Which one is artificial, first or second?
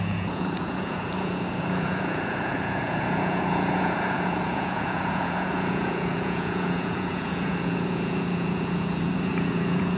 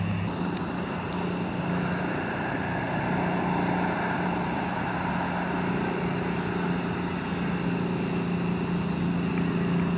first